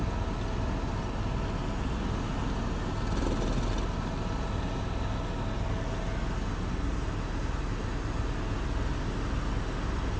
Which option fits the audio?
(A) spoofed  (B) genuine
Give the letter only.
B